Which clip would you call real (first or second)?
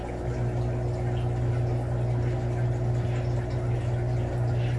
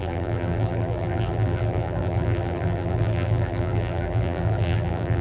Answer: first